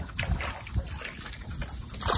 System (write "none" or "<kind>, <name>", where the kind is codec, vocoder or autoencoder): none